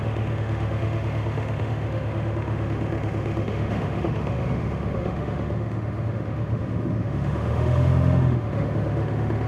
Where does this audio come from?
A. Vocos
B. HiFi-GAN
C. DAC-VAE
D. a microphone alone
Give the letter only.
C